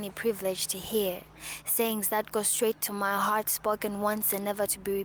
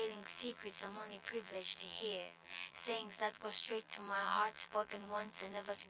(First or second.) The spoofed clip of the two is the second